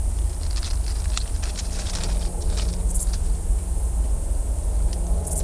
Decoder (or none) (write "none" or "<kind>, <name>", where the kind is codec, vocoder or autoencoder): none